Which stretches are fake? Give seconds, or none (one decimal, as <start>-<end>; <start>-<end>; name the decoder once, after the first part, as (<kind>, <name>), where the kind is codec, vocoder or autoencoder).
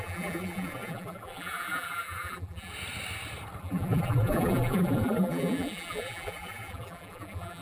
0.0-2.7 (vocoder, BigVGAN v2); 3.6-7.6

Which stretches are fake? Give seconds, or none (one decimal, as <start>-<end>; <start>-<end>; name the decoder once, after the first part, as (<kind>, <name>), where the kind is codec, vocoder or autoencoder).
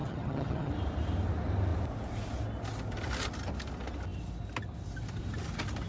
0.0-0.7 (vocoder, HiFi-GAN)